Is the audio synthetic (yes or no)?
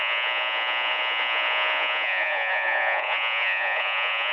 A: yes